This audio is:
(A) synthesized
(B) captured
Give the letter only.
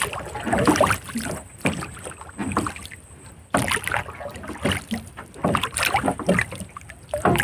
B